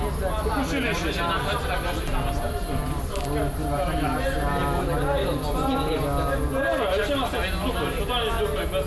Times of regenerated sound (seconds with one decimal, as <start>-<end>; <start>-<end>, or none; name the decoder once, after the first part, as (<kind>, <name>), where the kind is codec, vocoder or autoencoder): none